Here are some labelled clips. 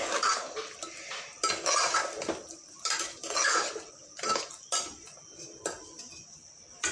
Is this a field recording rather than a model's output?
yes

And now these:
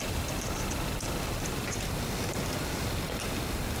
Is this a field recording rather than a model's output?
yes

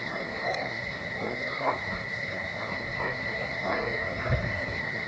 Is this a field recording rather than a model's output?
no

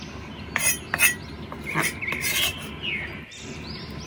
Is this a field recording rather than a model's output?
yes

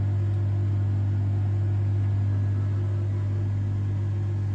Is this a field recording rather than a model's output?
yes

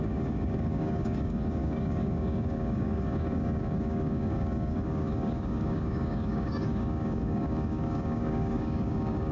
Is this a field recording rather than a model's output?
no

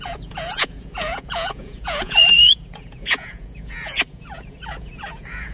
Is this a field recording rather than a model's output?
no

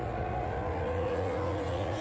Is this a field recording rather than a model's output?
no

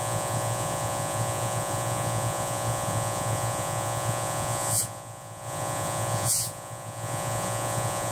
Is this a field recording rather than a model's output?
no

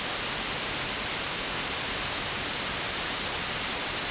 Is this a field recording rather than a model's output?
yes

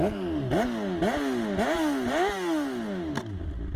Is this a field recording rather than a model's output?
yes